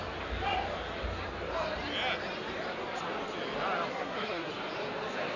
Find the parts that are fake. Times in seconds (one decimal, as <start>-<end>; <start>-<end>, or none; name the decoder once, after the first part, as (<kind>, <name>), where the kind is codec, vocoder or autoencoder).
3.9-4.5 (codec, SNAC)